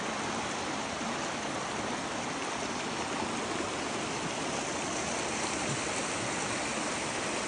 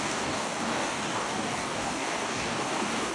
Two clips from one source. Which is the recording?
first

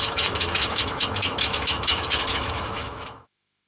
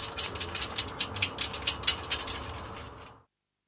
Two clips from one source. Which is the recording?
second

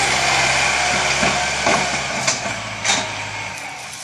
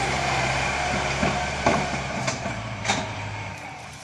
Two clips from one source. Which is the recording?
first